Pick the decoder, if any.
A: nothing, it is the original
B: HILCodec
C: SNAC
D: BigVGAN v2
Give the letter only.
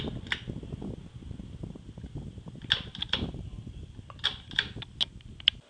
A